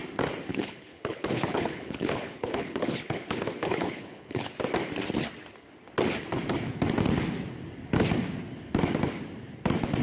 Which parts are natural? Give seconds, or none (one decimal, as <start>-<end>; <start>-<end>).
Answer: 0.0-0.5; 4.5-10.0